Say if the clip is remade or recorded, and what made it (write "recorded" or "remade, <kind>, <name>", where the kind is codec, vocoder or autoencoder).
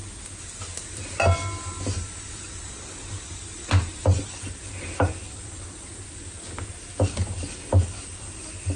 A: recorded